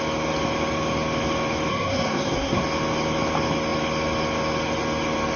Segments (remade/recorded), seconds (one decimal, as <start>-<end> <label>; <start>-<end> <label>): 0.0-1.7 recorded; 1.7-2.6 remade; 2.6-5.4 recorded

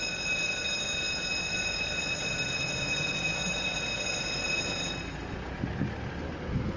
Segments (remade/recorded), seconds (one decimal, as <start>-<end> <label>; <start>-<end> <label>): 0.0-6.8 recorded

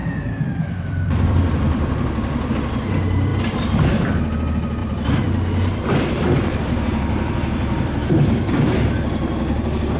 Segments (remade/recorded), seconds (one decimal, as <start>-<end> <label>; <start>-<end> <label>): 0.0-2.5 remade; 2.5-4.8 recorded; 4.8-8.5 remade; 8.5-10.0 recorded

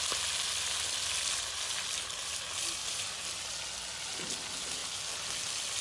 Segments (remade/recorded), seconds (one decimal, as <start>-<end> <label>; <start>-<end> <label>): 0.0-2.8 recorded; 2.8-3.4 remade; 3.4-5.8 recorded